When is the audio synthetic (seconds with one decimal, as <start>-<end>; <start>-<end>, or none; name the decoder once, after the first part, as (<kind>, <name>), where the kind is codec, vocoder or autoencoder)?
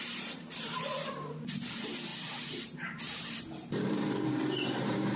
0.0-5.2 (vocoder, BigVGAN v2)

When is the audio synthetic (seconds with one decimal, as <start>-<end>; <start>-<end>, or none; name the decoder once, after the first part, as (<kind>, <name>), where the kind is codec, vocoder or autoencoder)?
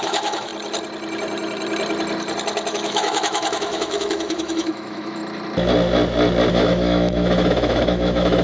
0.0-0.5 (autoencoder, DAC-VAE); 2.7-5.2; 6.5-8.4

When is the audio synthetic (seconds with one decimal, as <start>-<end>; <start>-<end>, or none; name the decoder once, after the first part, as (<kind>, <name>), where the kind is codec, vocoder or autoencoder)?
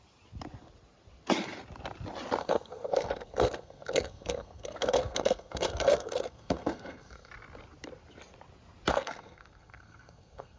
2.4-7.3 (codec, SNAC); 8.9-10.6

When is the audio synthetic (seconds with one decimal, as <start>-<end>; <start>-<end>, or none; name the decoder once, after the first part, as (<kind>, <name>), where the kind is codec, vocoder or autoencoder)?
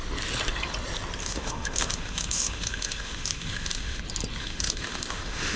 1.2-4.0 (autoencoder, DAC-VAE); 4.4-5.6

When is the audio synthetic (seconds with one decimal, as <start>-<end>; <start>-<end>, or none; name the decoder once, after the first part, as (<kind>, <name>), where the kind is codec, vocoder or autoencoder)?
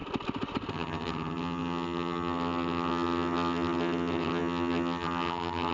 0.7-5.7 (vocoder, HiFi-GAN)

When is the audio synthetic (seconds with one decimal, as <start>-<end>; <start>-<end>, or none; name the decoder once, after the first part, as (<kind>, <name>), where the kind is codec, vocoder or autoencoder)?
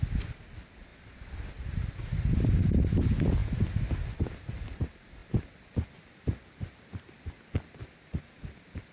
5.2-8.2 (vocoder, BigVGAN v2)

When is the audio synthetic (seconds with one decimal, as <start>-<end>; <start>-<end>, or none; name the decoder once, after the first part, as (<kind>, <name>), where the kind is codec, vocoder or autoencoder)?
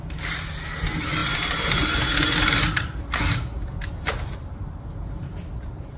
none